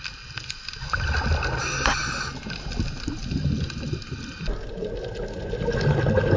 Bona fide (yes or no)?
yes